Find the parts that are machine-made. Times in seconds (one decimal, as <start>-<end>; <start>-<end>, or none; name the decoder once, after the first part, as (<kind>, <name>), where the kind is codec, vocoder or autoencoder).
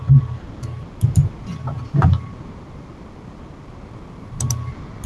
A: none